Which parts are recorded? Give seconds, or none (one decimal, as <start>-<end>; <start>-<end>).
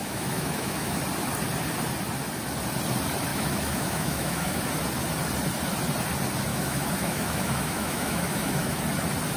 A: 1.0-3.3; 4.6-6.5; 8.8-9.4